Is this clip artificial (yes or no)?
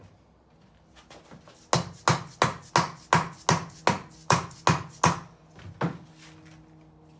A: no